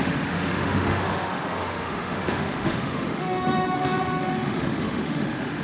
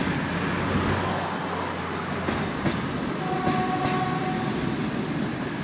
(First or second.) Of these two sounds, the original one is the second